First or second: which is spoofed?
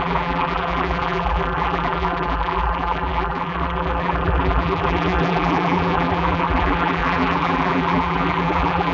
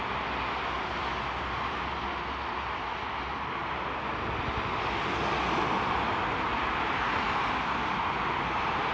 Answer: first